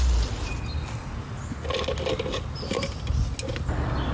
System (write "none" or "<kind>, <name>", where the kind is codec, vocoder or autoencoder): none